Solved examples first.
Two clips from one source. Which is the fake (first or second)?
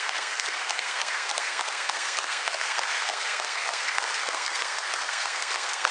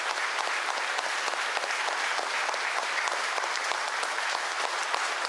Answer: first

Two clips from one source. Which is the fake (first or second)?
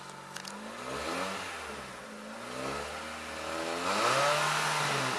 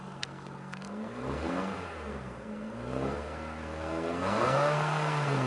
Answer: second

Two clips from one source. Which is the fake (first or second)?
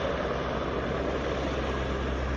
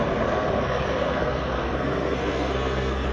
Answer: second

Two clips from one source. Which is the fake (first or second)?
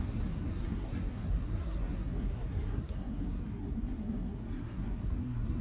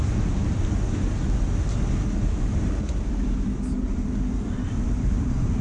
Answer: first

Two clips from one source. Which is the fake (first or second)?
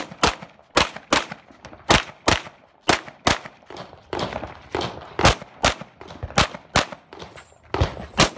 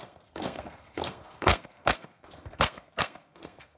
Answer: second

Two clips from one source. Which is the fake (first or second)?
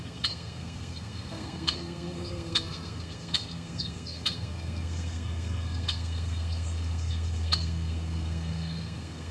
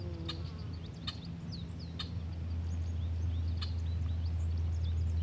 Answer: first